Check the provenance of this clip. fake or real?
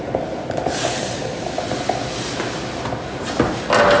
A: real